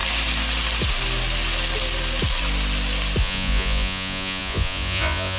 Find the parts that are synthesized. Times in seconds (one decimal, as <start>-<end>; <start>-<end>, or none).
3.2-5.4